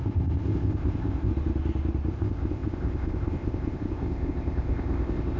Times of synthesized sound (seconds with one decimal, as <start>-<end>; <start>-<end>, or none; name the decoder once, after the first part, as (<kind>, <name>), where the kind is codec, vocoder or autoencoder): 0.0-1.3 (codec, ZipCodec); 2.1-5.4